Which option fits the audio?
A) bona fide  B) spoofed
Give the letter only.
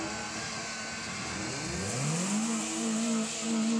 A